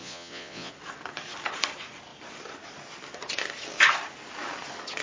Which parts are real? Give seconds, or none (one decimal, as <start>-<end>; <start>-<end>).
0.7-5.0